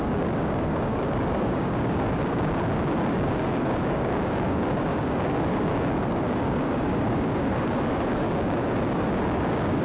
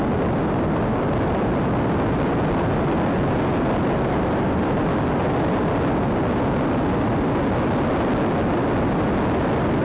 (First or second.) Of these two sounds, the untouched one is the second